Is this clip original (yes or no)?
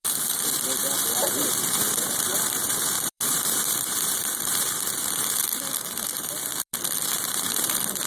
no